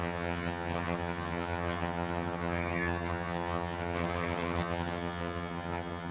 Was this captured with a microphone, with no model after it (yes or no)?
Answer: no